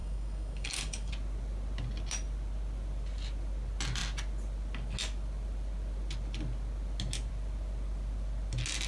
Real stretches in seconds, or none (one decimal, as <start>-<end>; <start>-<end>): 1.1-8.9